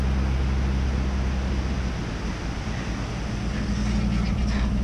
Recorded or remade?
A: recorded